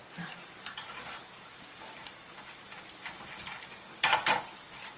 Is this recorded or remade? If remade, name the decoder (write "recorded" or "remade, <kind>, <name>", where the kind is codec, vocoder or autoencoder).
remade, vocoder, BigVGAN v2